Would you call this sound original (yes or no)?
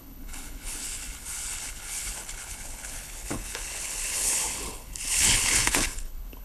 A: no